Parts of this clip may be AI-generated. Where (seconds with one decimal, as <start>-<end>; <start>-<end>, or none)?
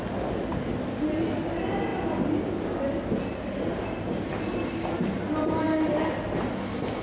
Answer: none